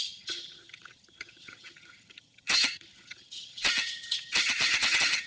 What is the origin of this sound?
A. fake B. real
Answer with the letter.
A